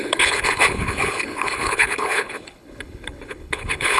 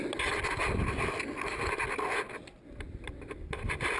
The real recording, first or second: second